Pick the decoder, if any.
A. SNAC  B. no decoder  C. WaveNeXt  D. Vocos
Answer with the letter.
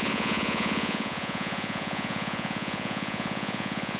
D